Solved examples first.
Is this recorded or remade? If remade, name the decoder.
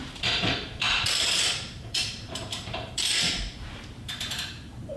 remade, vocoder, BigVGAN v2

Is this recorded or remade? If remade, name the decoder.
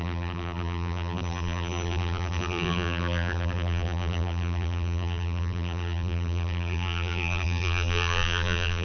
remade, vocoder, BigVGAN v2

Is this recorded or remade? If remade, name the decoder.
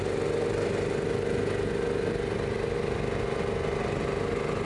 recorded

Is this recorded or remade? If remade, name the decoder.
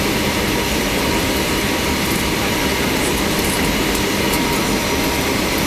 recorded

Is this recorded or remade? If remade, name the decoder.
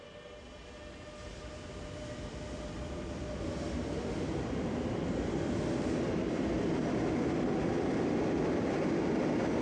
recorded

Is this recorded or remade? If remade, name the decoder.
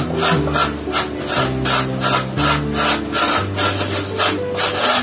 recorded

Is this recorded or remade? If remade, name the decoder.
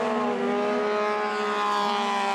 recorded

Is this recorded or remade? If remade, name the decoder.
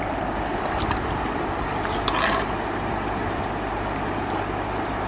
recorded